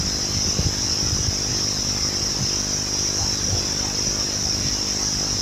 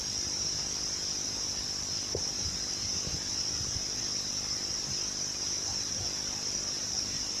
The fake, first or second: second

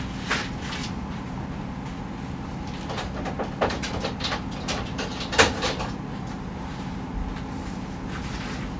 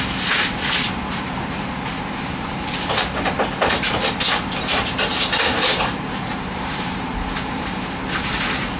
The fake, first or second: second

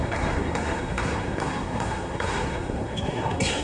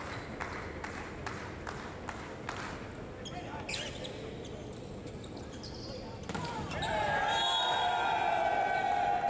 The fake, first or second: first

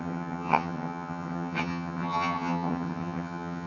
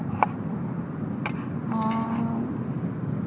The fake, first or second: first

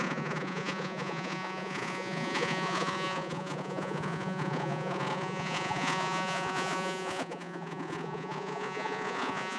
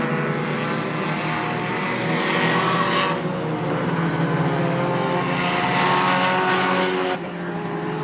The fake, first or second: first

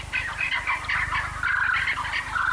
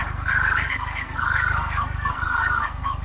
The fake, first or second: second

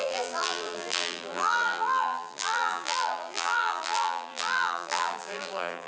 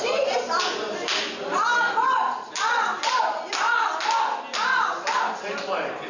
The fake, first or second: first